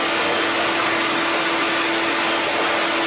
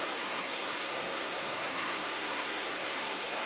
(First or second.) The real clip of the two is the first